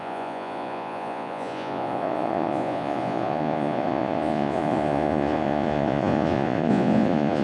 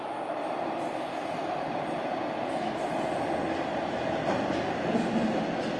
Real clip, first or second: second